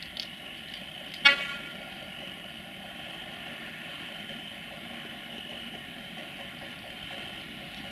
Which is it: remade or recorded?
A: recorded